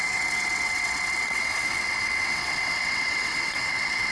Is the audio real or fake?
fake